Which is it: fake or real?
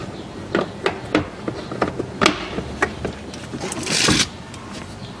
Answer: real